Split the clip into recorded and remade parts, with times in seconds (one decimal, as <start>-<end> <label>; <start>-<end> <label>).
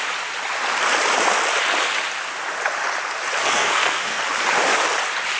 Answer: 0.0-3.4 recorded; 3.4-4.2 remade; 4.2-5.4 recorded